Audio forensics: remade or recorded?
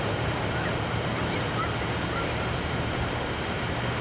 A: remade